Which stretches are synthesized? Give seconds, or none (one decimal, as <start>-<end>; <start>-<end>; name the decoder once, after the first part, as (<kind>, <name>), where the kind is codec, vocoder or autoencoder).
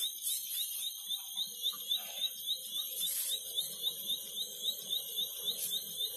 none